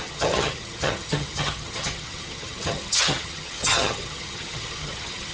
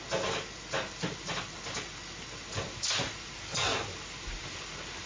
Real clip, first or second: second